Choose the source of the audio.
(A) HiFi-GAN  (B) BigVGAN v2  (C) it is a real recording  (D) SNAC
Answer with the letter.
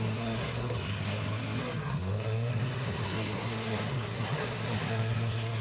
D